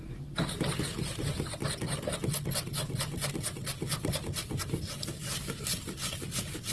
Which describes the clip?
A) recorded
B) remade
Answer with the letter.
A